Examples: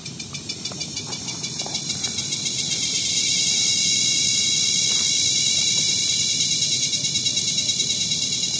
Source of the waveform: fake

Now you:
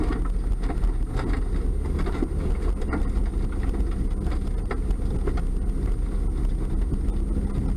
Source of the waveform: real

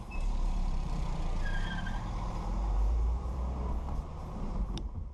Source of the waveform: fake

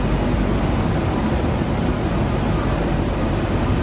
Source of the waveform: real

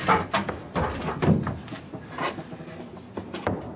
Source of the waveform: real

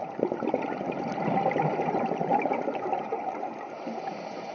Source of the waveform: fake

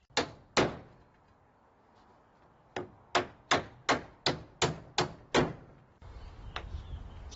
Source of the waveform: real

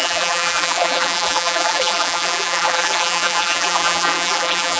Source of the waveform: fake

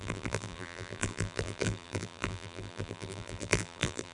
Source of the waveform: fake